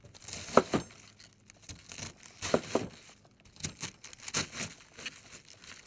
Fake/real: real